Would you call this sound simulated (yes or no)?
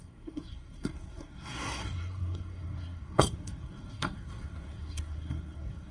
yes